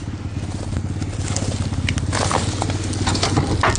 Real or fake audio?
real